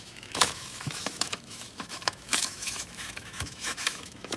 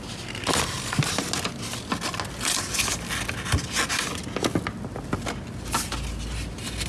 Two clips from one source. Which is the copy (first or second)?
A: first